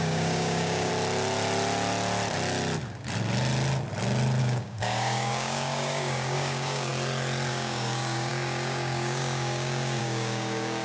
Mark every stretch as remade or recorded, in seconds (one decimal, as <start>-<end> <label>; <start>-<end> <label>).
0.0-0.9 remade; 0.9-4.4 recorded; 4.4-6.9 remade; 6.9-7.5 recorded; 7.5-10.8 remade